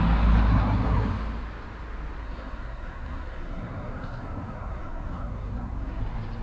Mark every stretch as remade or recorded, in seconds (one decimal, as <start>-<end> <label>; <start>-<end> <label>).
0.0-0.5 recorded; 0.5-1.1 remade; 1.1-2.2 recorded; 2.2-6.0 remade; 6.0-6.4 recorded